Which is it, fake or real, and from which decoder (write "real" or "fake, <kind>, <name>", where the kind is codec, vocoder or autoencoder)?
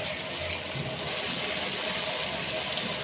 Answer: real